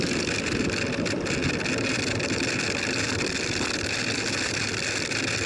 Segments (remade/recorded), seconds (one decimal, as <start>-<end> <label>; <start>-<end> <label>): 0.0-5.5 remade